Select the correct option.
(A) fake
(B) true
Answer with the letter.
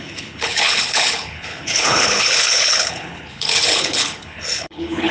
A